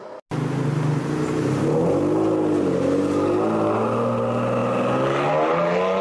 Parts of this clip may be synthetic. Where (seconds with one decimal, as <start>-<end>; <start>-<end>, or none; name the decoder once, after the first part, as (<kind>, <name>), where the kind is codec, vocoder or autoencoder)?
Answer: none